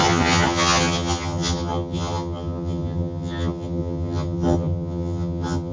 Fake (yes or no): yes